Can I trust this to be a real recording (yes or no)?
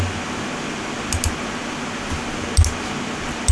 yes